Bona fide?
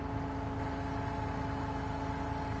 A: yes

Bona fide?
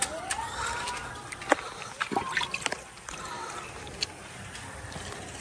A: no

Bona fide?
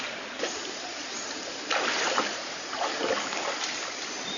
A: no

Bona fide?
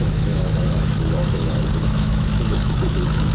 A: no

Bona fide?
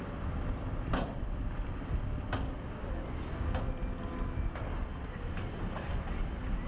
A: yes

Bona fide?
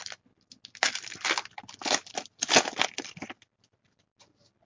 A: yes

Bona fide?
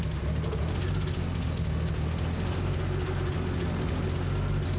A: yes